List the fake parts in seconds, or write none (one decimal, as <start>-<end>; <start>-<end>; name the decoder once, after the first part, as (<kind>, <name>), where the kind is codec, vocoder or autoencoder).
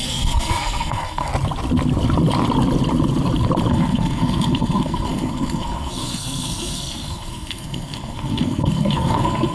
0.0-1.3 (codec, SNAC); 3.7-9.5